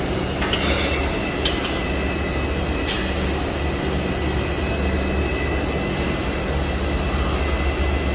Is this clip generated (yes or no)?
no